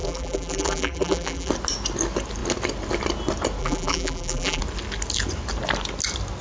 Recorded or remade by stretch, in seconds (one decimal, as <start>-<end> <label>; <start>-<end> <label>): 0.0-1.5 remade; 1.5-3.6 recorded; 3.6-4.6 remade; 4.6-6.4 recorded